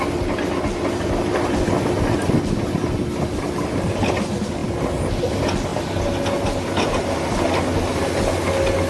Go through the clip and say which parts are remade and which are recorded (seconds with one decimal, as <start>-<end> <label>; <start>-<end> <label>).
0.0-8.9 recorded